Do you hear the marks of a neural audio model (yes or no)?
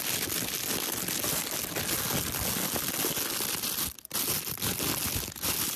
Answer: no